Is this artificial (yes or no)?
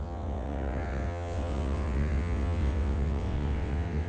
yes